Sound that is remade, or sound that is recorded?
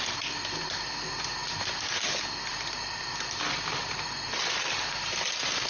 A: recorded